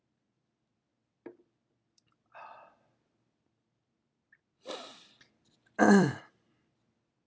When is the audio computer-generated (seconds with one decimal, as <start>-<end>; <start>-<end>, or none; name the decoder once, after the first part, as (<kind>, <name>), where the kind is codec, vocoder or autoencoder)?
0.0-7.3 (vocoder, BigVGAN v2)